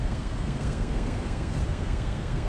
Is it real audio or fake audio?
fake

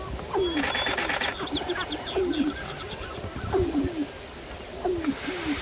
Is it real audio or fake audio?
real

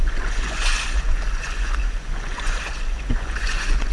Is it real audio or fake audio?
fake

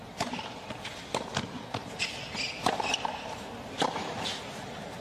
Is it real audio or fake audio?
real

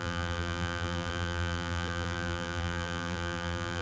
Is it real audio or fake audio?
fake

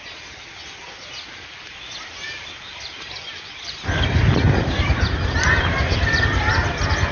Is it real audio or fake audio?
real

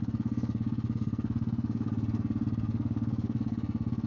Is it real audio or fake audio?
fake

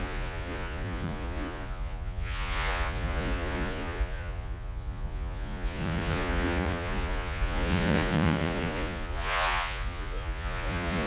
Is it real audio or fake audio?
fake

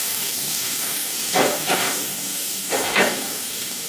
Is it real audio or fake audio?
fake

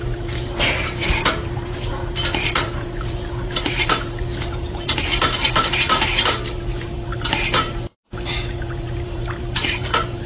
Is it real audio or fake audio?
fake